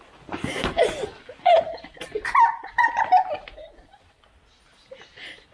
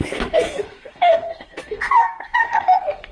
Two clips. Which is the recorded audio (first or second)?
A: first